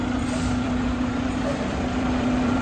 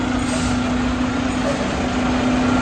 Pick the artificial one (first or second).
first